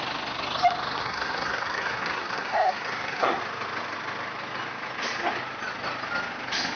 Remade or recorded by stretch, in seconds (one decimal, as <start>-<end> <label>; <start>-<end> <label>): 0.0-1.0 recorded; 1.0-3.4 remade; 3.4-6.8 recorded

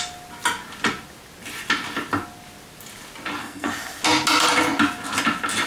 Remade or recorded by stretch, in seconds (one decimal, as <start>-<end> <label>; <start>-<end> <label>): 0.0-3.4 recorded; 3.4-4.0 remade; 4.0-5.7 recorded

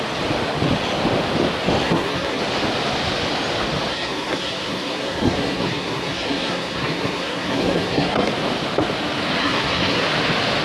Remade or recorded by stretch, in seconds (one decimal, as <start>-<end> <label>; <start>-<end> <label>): 0.0-1.8 recorded; 1.8-2.4 remade; 2.4-3.9 recorded; 3.9-8.3 remade; 8.3-9.4 recorded; 9.4-10.0 remade; 10.0-10.6 recorded

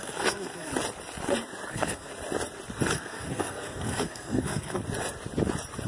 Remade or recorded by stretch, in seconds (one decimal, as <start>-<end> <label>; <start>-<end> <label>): 0.0-0.7 remade; 0.7-1.7 recorded; 1.7-2.1 remade; 2.1-2.9 recorded; 2.9-4.8 remade; 4.8-5.9 recorded

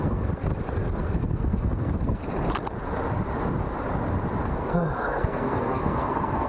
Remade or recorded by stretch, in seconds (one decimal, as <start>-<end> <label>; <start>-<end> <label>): 0.0-0.5 remade; 0.5-1.0 recorded; 1.0-2.2 remade; 2.2-4.4 recorded; 4.4-6.5 remade

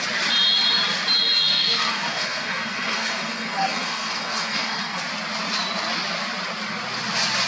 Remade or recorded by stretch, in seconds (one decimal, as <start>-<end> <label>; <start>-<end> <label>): 0.0-1.5 recorded; 1.5-5.0 remade; 5.0-7.5 recorded